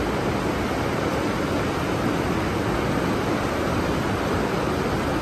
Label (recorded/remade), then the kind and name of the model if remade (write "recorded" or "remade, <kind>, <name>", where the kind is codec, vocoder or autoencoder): recorded